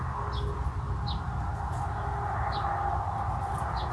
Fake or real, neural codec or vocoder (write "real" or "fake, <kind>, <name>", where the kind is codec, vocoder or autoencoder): real